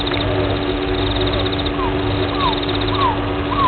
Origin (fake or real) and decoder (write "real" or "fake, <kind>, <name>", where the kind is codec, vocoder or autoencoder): real